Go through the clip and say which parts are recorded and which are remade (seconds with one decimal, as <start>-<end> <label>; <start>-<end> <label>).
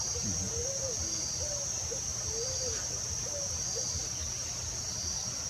0.0-5.5 recorded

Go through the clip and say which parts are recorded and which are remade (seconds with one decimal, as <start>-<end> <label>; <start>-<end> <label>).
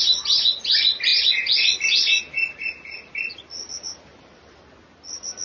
0.0-5.4 recorded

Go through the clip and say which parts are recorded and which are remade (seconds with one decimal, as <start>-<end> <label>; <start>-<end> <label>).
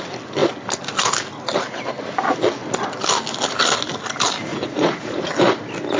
0.0-4.5 recorded; 4.5-5.3 remade; 5.3-6.0 recorded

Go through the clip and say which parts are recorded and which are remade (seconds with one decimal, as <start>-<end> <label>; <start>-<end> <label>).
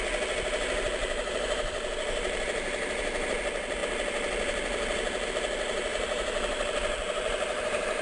0.0-1.0 recorded; 1.0-3.3 remade; 3.3-5.9 recorded; 5.9-8.0 remade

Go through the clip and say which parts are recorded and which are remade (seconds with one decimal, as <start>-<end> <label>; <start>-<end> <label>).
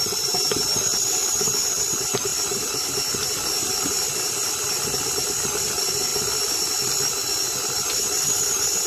0.0-8.9 recorded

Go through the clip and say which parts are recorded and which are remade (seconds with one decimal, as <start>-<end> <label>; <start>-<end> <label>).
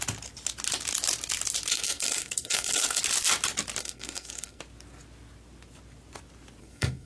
0.0-1.7 recorded; 1.7-3.0 remade; 3.0-3.8 recorded; 3.8-4.6 remade; 4.6-6.6 recorded; 6.6-7.1 remade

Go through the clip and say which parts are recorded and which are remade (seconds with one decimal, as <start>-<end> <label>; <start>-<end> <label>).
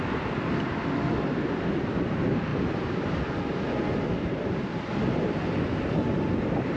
0.0-6.8 recorded